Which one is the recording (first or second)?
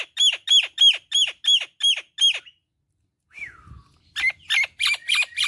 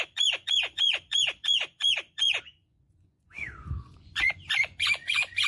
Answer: first